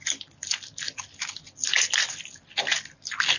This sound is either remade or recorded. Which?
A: recorded